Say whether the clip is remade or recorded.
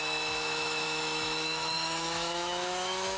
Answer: remade